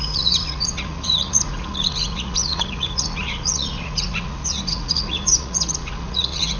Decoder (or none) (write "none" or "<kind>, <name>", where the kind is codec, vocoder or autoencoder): vocoder, Vocos